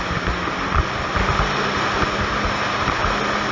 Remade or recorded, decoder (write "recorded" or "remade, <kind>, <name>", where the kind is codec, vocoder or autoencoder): recorded